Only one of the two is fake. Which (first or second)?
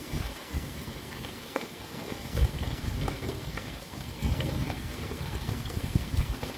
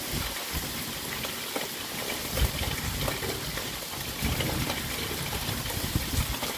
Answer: first